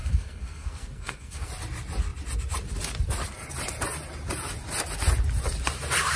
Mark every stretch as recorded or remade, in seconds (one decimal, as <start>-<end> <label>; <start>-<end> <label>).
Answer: 0.0-1.5 remade; 1.5-6.2 recorded